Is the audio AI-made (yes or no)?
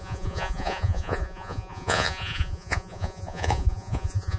yes